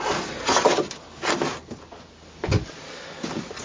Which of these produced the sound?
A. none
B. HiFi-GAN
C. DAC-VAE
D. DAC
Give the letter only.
A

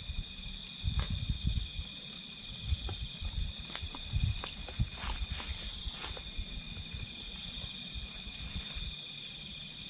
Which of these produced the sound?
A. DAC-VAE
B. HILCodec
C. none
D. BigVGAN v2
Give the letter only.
C